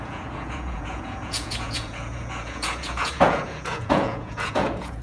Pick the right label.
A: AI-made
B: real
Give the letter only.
A